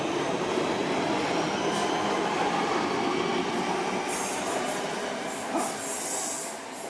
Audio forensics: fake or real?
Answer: real